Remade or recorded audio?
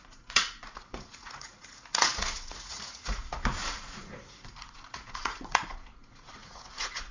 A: remade